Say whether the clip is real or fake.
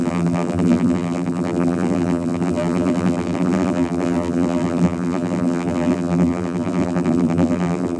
fake